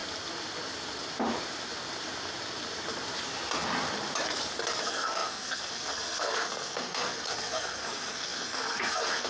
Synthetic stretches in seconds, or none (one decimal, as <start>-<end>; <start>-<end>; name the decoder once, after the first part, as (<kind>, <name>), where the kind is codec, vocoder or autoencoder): 4.8-9.3 (codec, SNAC)